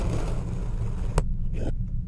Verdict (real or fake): real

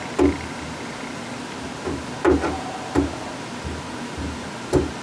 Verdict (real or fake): real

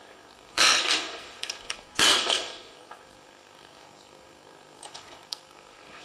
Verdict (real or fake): fake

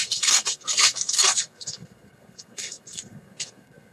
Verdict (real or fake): fake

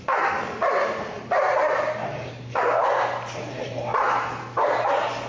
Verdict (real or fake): real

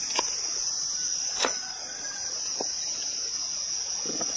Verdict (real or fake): real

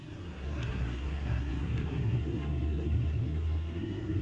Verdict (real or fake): fake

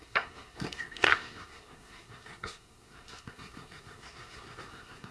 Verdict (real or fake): fake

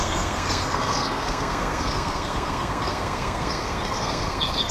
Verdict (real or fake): fake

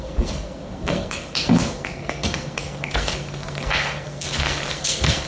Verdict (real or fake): fake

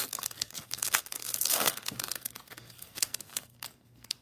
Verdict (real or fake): fake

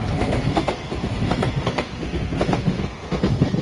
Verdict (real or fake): fake